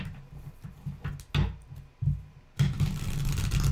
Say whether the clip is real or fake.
real